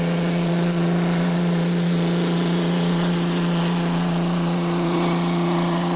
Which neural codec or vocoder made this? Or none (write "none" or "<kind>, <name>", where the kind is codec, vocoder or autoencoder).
vocoder, Vocos